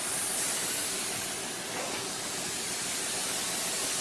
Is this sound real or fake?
real